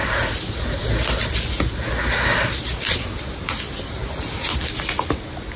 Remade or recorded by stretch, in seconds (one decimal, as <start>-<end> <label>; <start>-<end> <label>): 0.0-5.6 recorded